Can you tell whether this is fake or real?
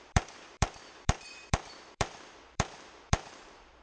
fake